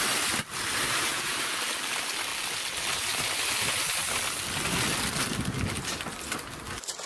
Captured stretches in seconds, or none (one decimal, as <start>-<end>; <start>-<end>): 0.0-1.1; 1.6-7.1